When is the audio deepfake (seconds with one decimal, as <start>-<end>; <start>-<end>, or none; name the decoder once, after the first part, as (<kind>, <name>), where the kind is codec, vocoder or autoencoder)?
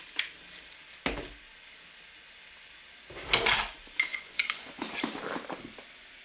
4.1-4.8 (vocoder, Vocos)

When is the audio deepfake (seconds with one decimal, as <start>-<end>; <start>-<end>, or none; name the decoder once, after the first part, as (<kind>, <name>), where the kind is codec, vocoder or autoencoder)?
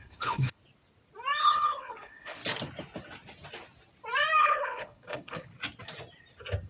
0.0-0.6 (codec, HILCodec); 1.4-2.4; 4.4-5.5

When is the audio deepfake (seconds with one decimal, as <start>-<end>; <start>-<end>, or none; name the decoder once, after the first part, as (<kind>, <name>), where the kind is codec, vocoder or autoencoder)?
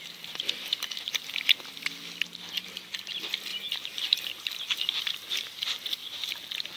3.5-5.5 (vocoder, BigVGAN v2); 6.0-6.8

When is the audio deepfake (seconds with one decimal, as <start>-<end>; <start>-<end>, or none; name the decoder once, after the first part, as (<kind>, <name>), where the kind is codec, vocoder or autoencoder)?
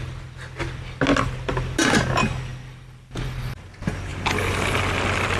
none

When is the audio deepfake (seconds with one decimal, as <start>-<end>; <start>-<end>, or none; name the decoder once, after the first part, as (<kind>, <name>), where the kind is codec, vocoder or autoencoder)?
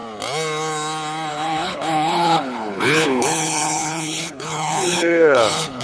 1.3-5.8 (codec, HILCodec)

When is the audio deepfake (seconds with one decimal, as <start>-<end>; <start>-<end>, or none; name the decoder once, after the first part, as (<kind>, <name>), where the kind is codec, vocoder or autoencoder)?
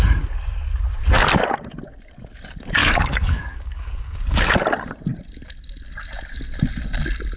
2.8-4.5 (codec, DAC)